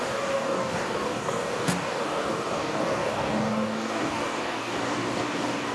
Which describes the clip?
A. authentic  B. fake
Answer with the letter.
B